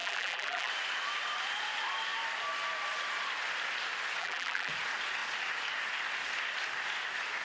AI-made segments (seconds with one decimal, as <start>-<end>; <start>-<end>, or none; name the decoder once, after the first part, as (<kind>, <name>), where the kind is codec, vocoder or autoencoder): 0.0-0.7 (vocoder, BigVGAN v2); 4.2-4.7